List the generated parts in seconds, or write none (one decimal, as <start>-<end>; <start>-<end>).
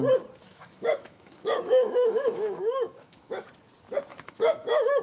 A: 0.5-3.5; 4.1-5.0